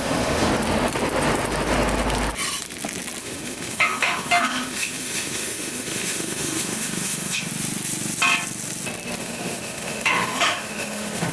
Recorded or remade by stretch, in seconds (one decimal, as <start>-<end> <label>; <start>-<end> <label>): 0.0-0.5 remade; 0.5-3.2 recorded; 3.2-7.5 remade; 7.5-9.2 recorded; 9.2-11.3 remade